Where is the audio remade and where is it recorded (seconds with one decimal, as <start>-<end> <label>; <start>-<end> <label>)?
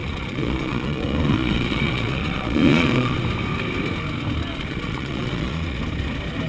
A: 0.0-3.2 remade; 3.2-4.5 recorded; 4.5-5.8 remade; 5.8-6.5 recorded